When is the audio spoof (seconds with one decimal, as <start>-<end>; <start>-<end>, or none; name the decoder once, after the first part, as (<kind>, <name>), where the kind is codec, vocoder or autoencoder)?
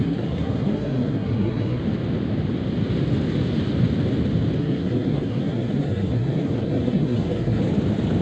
0.0-1.8 (codec, SNAC); 4.6-7.6